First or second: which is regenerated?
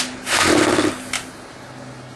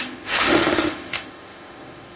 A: second